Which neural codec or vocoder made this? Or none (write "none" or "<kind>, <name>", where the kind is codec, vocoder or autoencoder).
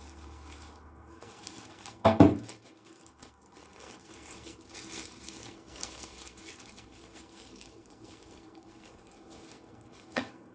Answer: codec, SNAC